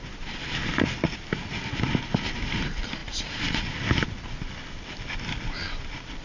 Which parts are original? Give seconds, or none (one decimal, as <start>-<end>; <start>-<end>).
0.0-6.2